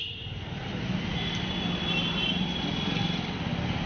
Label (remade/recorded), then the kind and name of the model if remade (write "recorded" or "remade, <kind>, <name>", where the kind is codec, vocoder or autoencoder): recorded